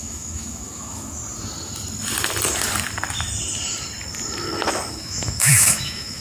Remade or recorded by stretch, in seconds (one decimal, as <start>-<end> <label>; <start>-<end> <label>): 0.0-1.2 remade; 1.2-4.9 recorded; 4.9-6.2 remade